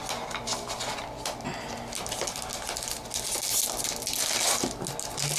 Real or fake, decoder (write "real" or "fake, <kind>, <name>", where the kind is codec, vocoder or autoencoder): real